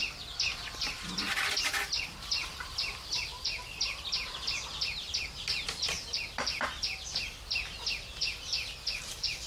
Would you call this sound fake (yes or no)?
yes